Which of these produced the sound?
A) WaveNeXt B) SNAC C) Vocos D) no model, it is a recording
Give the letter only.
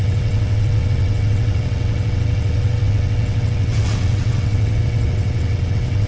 A